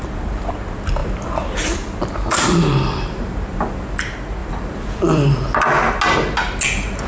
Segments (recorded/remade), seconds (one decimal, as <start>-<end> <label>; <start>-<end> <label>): 0.0-1.0 recorded; 1.0-3.7 remade; 3.7-4.4 recorded; 4.4-5.9 remade; 5.9-7.1 recorded